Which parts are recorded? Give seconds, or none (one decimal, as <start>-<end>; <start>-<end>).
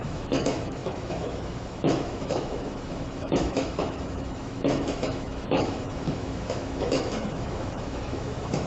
none